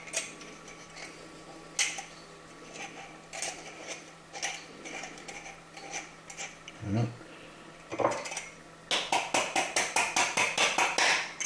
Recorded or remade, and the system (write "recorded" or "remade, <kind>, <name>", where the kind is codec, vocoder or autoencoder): recorded